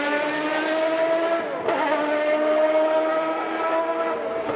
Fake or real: real